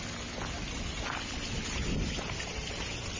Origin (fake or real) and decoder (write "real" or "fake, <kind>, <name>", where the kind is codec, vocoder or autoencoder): real